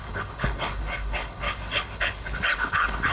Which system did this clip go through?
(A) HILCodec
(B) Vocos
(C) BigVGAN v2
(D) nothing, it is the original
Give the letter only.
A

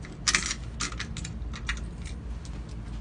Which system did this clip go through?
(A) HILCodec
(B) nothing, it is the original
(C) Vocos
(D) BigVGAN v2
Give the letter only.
B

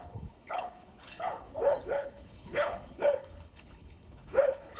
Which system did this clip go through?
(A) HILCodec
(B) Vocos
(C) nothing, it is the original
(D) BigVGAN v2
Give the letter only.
A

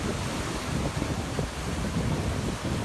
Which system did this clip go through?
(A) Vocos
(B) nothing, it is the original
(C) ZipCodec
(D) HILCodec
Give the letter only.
B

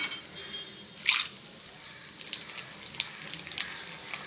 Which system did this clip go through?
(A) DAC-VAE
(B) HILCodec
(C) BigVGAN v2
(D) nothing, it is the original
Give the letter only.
D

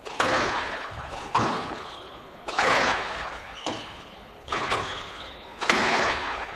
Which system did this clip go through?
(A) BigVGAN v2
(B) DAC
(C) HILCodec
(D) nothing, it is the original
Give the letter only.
C